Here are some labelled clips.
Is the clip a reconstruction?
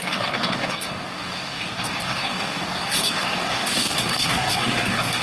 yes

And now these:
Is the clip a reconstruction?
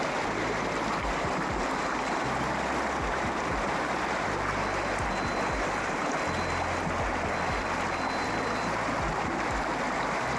no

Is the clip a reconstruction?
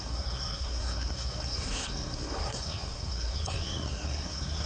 yes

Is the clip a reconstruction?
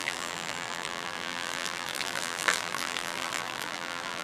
yes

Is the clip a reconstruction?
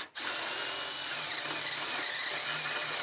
no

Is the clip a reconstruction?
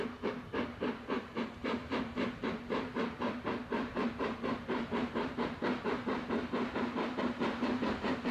yes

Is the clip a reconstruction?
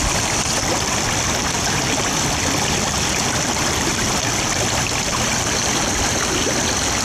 no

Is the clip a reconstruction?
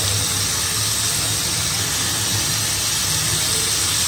no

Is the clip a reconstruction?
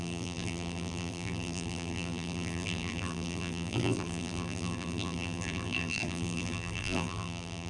yes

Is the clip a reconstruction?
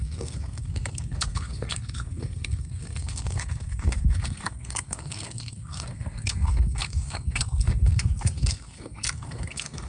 yes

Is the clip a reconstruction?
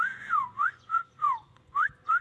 yes